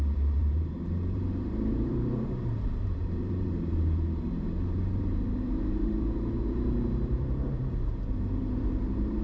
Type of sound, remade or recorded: remade